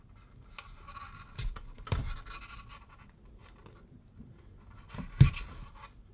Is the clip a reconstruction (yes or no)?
no